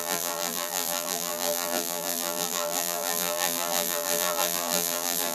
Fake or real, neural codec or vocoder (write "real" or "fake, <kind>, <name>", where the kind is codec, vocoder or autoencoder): fake, vocoder, BigVGAN v2